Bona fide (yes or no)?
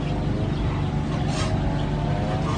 yes